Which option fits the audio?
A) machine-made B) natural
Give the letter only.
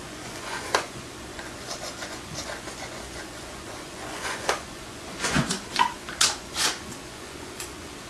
A